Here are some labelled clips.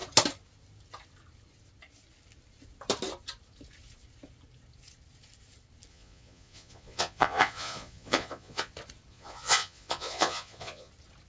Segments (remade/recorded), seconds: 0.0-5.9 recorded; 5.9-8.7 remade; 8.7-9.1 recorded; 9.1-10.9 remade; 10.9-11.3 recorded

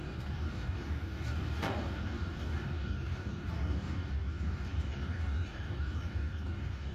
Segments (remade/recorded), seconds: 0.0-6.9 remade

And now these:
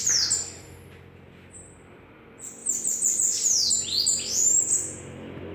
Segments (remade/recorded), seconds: 0.0-2.6 recorded; 2.6-3.7 remade; 3.7-5.5 recorded

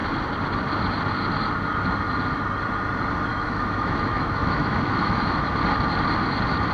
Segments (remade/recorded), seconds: 0.0-3.3 recorded; 3.3-5.5 remade; 5.5-6.7 recorded

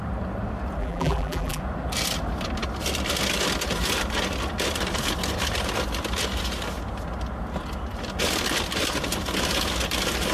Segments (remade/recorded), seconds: 0.0-0.8 recorded; 0.8-1.6 remade; 1.6-10.3 recorded

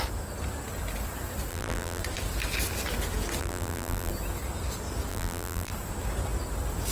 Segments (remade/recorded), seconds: 0.0-1.5 recorded; 1.5-2.0 remade; 2.0-3.4 recorded; 3.4-4.1 remade; 4.1-5.1 recorded; 5.1-5.7 remade; 5.7-6.9 recorded

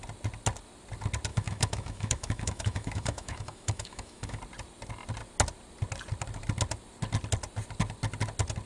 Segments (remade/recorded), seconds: 0.0-1.3 recorded; 1.3-4.4 remade; 4.4-8.7 recorded